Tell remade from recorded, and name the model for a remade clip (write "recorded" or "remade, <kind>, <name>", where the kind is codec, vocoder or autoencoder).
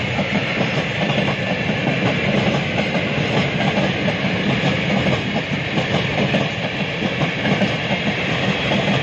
recorded